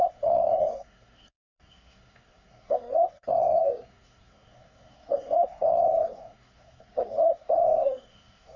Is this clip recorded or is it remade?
remade